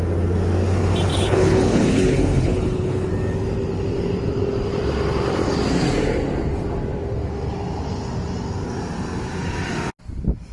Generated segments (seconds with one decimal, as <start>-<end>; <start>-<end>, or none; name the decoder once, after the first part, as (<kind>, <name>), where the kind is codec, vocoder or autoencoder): 1.1-3.1 (codec, HILCodec)